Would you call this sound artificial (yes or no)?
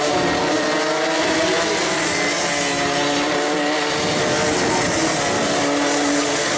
no